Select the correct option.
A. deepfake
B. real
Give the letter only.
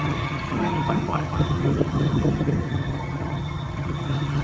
A